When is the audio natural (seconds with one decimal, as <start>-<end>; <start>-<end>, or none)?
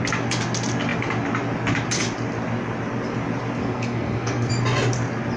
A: 0.0-3.6; 4.5-5.4